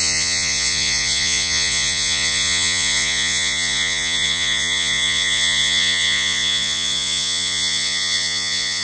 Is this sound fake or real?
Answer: fake